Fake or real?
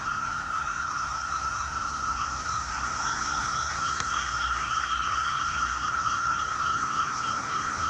fake